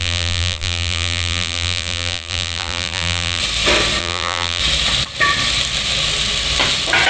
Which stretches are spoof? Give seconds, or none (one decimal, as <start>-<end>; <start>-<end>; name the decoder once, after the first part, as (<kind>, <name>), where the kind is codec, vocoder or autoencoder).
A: 0.0-3.4 (vocoder, BigVGAN v2); 4.0-4.6